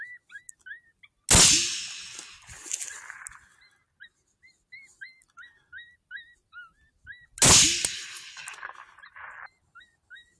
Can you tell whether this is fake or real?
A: real